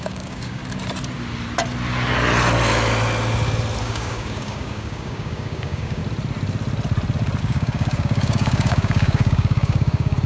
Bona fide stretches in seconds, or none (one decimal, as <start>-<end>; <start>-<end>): 0.6-3.8; 6.0-7.4